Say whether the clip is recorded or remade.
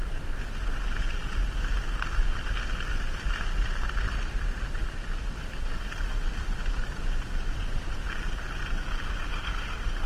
recorded